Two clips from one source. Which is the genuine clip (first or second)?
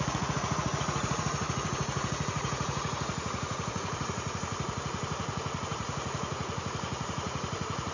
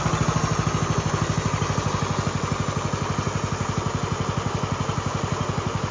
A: second